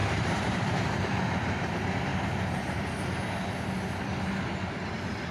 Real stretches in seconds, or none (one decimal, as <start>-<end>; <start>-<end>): 1.7-5.3